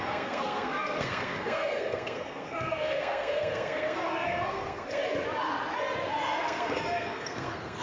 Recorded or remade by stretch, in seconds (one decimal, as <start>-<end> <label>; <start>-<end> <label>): 0.0-5.0 remade; 5.0-6.1 recorded; 6.1-7.8 remade